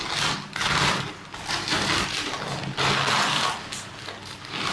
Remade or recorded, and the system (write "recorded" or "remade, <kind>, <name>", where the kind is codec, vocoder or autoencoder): recorded